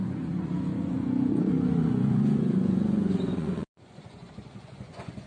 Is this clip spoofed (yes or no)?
yes